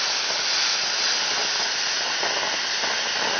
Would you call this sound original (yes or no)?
yes